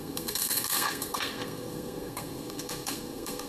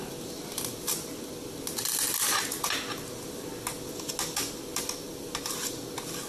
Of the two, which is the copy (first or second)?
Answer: first